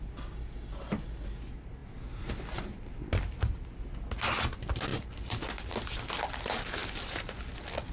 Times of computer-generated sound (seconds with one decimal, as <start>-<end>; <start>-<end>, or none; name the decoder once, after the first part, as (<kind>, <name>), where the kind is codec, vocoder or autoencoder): none